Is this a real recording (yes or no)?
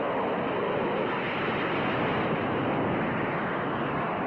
yes